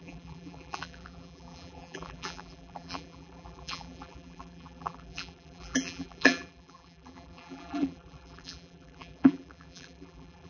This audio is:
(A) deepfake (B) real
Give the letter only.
A